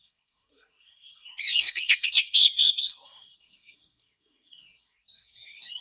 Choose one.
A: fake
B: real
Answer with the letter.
A